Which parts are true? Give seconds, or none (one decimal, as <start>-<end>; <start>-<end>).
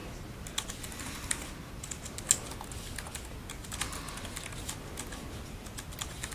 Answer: 0.0-6.3